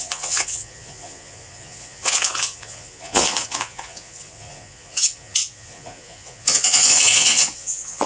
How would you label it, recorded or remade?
remade